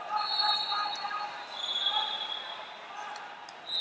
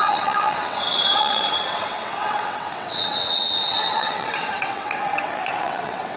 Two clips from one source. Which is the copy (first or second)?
second